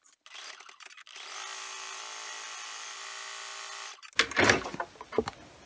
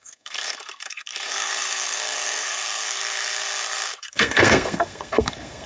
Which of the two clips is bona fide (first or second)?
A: first